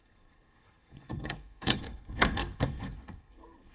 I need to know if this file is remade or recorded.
remade